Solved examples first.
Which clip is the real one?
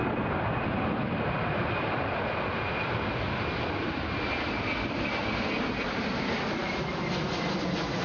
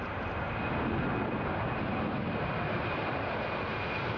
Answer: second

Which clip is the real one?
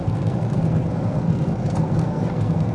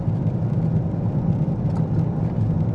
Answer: second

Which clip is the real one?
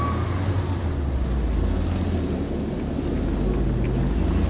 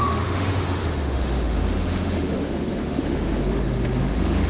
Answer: first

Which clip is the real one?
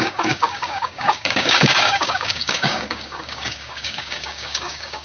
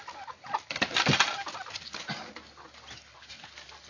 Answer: second